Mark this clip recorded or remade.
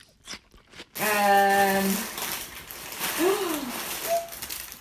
recorded